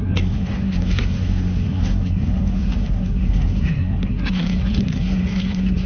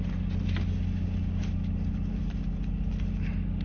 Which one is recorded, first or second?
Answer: second